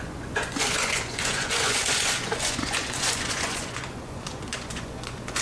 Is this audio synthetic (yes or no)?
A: yes